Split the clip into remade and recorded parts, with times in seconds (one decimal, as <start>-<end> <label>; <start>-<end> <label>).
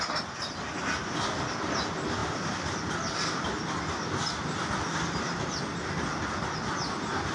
0.0-7.3 recorded